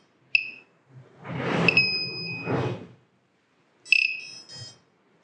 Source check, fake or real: real